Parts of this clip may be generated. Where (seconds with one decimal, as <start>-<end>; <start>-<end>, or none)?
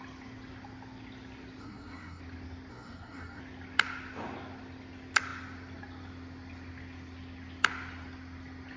1.6-2.2; 2.7-3.4